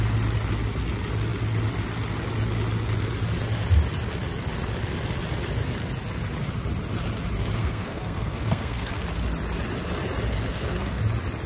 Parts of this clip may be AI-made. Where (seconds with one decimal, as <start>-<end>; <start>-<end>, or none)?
7.6-8.9; 10.5-11.0